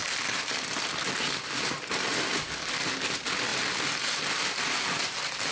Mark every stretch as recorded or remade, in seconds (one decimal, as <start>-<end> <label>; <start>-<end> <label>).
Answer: 0.0-5.5 recorded